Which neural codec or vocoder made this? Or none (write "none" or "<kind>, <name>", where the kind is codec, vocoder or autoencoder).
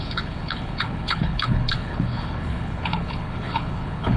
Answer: codec, HILCodec